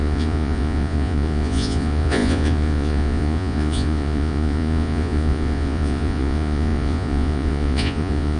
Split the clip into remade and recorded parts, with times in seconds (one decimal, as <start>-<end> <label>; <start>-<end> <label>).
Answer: 0.0-8.4 remade